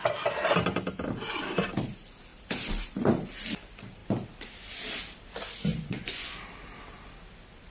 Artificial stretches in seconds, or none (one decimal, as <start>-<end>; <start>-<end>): 5.7-6.3